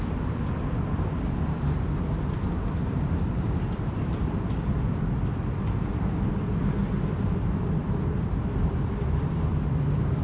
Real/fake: fake